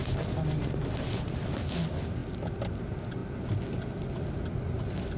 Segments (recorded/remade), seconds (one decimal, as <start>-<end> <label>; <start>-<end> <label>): 0.0-5.2 recorded